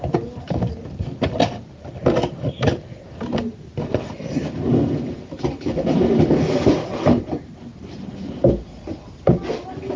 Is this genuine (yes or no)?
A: yes